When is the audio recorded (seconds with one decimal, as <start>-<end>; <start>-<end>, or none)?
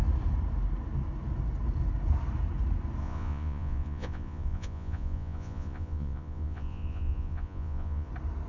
0.0-3.0; 8.1-8.5